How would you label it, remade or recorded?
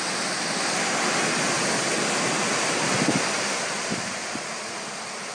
recorded